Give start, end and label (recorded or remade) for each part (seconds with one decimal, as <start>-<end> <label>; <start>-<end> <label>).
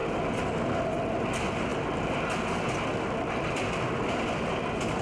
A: 0.0-5.0 recorded